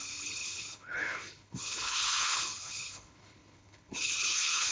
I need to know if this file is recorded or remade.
remade